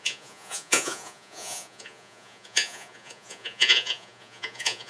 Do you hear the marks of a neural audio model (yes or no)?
yes